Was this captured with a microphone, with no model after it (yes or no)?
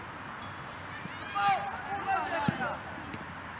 yes